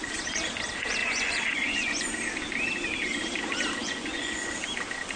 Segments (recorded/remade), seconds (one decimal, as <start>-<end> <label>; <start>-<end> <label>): 0.0-1.0 recorded; 1.0-2.1 remade; 2.1-3.8 recorded; 3.8-4.5 remade; 4.5-5.2 recorded

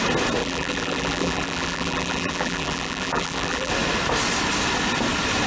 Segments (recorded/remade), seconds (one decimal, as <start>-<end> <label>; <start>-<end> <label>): 0.0-0.4 recorded; 0.4-3.7 remade; 3.7-5.5 recorded

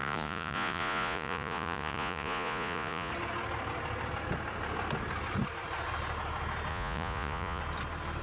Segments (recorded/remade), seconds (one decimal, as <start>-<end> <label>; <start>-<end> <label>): 0.0-3.1 remade; 3.1-6.7 recorded; 6.7-7.6 remade; 7.6-8.2 recorded

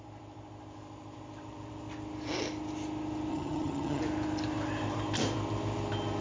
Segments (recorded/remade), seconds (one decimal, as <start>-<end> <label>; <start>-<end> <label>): 0.0-3.3 recorded; 3.3-4.0 remade; 4.0-6.2 recorded

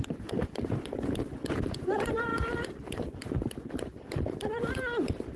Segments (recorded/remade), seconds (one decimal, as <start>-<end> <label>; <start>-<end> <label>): 0.0-5.4 remade

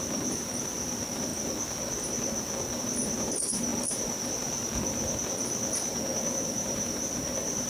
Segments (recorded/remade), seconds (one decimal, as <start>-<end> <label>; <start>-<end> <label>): 0.0-1.3 remade; 1.3-2.8 recorded; 2.8-3.7 remade; 3.7-6.2 recorded; 6.2-7.7 remade

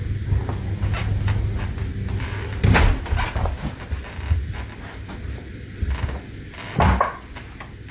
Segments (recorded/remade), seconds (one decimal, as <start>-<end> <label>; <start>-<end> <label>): 0.0-7.9 recorded